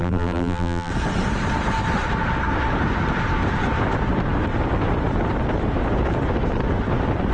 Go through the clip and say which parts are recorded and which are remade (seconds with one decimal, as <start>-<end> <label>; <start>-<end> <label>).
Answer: 0.0-0.9 remade; 0.9-7.3 recorded